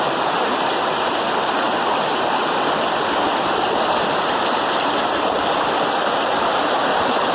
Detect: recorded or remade recorded